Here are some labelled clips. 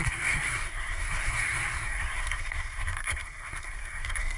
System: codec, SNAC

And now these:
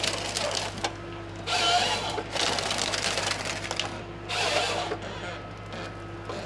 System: none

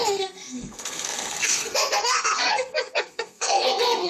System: codec, SNAC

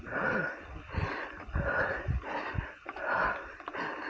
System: none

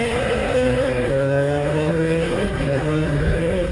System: codec, SNAC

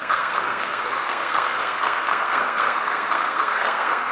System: codec, SNAC